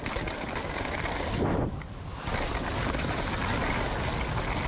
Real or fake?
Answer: real